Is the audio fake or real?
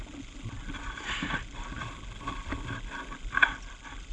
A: real